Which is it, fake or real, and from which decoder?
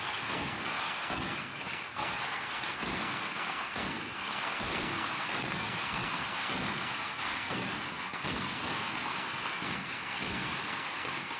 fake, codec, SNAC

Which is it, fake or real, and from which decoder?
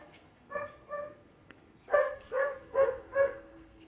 fake, codec, SNAC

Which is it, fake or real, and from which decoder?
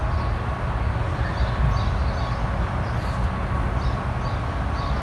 real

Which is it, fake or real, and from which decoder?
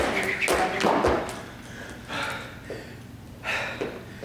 real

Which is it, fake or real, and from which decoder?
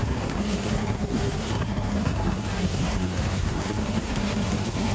fake, codec, SNAC